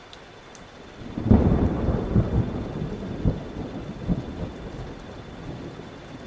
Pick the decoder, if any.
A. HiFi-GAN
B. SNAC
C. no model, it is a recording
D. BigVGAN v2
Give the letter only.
C